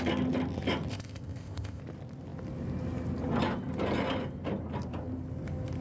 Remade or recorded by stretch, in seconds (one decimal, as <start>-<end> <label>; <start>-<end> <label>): 0.0-0.9 recorded; 0.9-1.8 remade; 1.8-5.8 recorded